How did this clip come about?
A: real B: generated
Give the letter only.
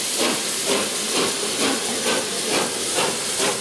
A